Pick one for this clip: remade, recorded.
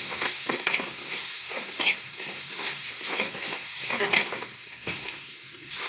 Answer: remade